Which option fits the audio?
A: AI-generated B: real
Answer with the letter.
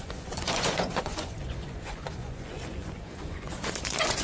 A